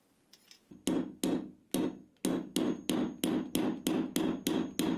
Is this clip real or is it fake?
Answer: real